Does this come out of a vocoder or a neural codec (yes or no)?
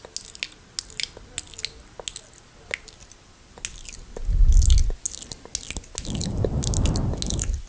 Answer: no